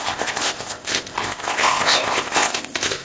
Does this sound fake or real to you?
fake